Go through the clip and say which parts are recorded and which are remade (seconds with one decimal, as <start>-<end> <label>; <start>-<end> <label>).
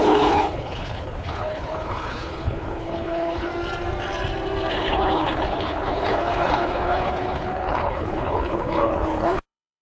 0.0-3.5 remade; 3.5-4.7 recorded; 4.7-9.8 remade